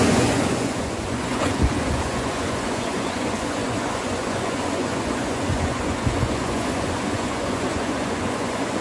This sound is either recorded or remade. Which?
remade